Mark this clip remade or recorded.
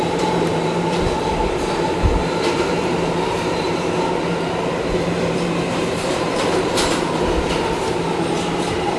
remade